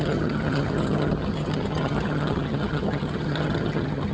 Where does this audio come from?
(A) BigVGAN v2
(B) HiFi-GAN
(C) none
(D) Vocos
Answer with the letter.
B